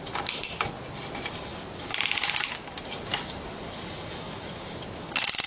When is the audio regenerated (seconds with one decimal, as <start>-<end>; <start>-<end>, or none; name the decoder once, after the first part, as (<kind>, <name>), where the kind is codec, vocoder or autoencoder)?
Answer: none